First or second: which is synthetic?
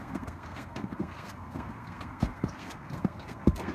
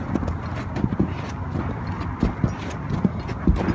first